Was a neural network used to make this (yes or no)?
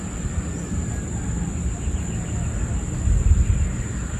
no